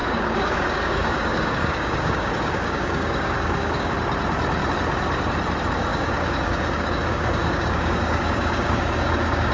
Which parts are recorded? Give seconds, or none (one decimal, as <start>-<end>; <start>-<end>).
3.9-5.9